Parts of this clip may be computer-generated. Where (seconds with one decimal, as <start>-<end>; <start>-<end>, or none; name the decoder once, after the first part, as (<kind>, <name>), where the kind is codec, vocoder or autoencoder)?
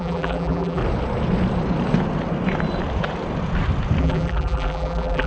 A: 0.0-0.8 (vocoder, BigVGAN v2); 4.0-5.3